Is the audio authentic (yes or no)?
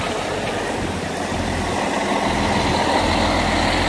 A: yes